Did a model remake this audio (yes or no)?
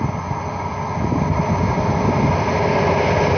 no